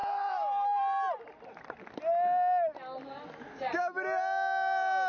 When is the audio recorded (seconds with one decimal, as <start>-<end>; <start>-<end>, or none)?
0.0-5.1